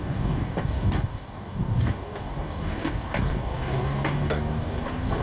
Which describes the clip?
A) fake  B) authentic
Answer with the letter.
A